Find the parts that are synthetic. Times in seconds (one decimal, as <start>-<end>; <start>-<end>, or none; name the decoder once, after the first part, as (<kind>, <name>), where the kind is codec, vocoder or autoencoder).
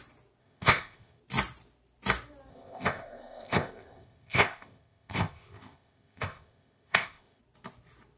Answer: 0.4-1.2 (codec, ZipCodec); 2.5-7.4